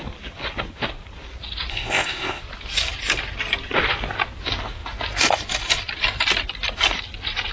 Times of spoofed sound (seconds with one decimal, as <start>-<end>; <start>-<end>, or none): 1.7-2.4